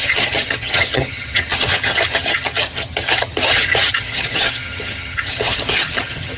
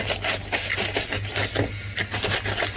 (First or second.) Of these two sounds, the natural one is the second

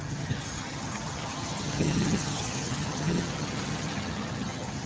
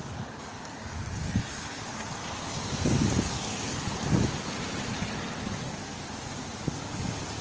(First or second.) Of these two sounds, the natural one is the second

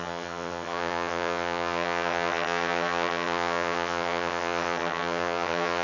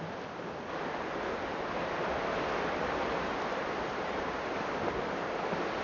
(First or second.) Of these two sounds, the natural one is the second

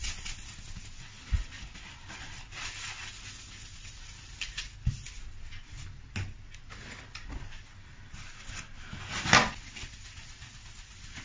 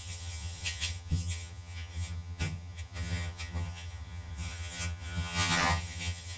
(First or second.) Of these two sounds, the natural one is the first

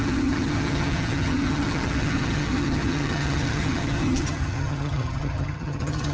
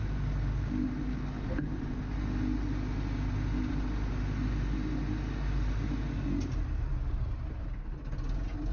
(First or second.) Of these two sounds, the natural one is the second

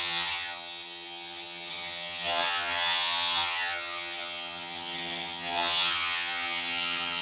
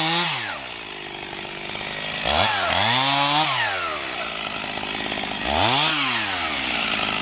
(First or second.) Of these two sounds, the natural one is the second